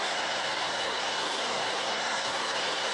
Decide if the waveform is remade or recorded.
remade